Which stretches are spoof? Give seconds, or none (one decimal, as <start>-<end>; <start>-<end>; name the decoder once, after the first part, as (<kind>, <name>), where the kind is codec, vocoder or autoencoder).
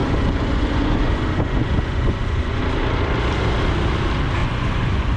0.0-2.6 (vocoder, Vocos); 4.4-5.2